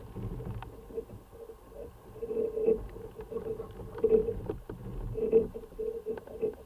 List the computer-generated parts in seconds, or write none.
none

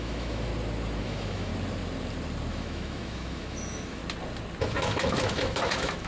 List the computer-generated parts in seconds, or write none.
0.0-0.5 (autoencoder, DAC-VAE); 1.0-1.5; 2.5-4.0; 4.6-6.1